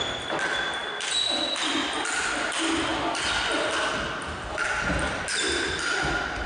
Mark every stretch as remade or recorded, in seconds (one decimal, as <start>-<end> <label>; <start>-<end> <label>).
0.0-6.5 recorded